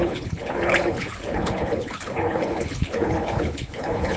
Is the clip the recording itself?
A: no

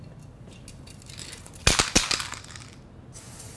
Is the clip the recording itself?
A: yes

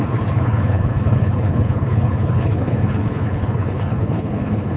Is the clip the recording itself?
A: no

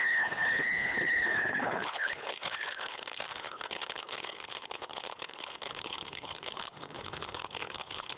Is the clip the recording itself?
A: no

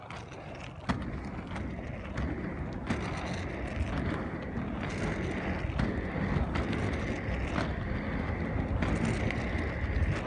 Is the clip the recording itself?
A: yes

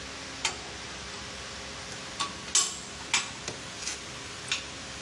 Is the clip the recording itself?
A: yes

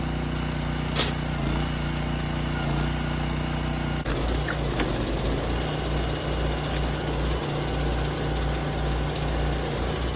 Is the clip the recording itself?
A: yes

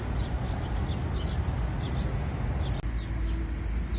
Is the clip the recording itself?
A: yes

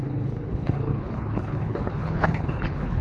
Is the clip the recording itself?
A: no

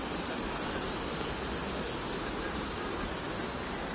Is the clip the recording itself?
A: yes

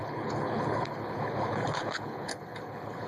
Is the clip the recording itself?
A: no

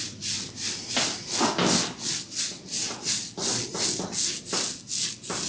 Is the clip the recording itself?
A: yes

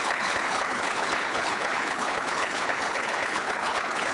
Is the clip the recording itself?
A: no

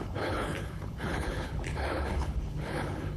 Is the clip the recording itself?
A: no